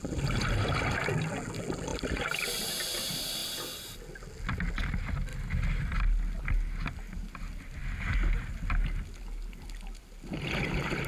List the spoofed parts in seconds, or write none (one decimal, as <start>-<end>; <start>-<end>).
none